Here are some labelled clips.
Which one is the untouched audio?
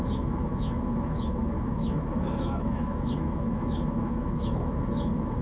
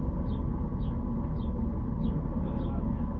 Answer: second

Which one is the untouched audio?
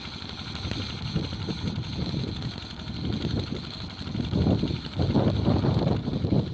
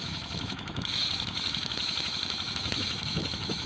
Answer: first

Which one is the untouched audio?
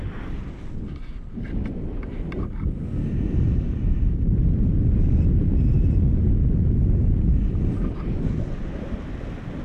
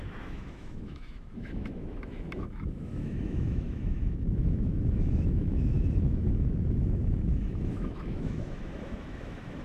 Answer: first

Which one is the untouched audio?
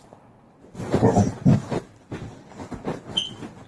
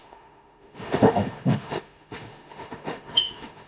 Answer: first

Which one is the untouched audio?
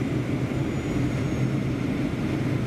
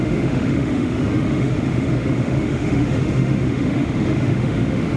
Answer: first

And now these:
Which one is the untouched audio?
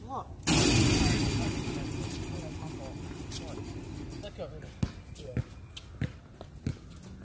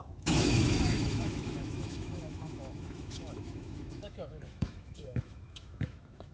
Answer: first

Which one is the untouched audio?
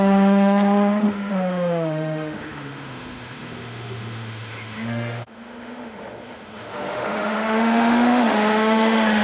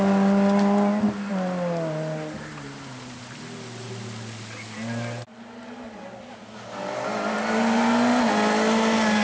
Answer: second